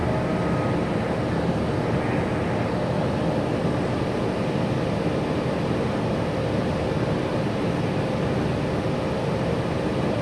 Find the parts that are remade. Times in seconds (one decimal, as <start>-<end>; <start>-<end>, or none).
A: none